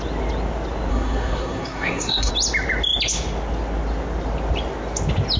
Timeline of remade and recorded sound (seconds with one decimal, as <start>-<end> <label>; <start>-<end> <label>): 0.0-0.9 recorded; 0.9-2.3 remade; 2.3-5.4 recorded